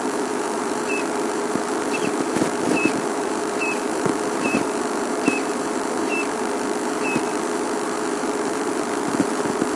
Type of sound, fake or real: fake